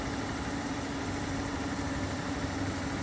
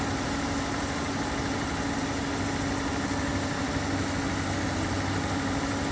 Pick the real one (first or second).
second